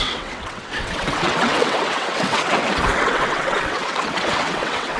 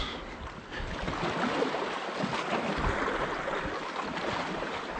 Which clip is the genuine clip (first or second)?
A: second